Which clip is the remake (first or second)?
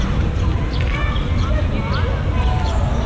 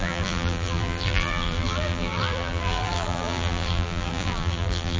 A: second